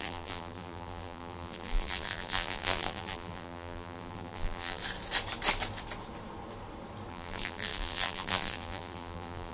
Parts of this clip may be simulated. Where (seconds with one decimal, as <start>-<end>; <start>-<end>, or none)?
0.0-4.8; 7.1-9.5